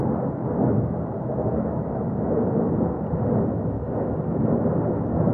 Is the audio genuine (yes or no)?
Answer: no